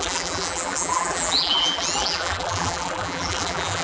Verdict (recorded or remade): remade